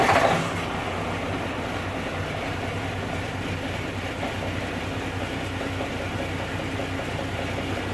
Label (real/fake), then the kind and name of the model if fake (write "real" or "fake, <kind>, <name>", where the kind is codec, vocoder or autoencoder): real